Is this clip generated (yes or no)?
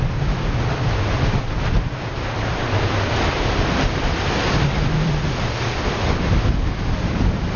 no